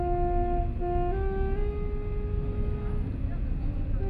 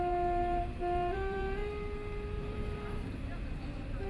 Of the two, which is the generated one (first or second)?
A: second